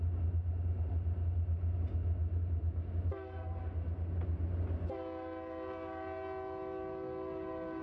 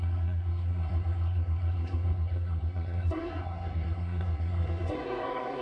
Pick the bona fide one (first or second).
first